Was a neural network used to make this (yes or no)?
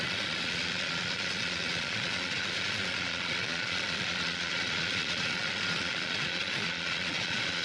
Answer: yes